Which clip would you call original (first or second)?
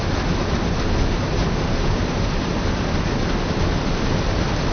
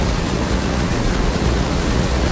first